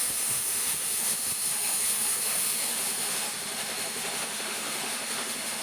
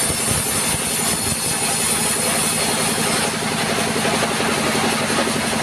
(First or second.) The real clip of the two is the second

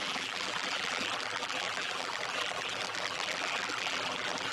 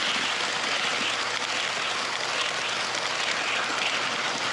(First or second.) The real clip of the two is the second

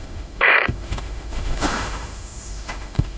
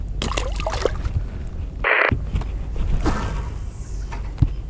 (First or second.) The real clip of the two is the second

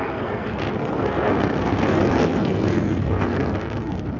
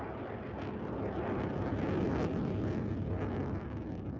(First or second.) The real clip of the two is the second